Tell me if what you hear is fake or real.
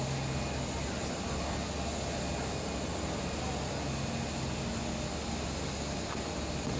real